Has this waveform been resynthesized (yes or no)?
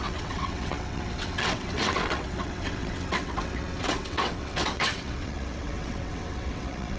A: yes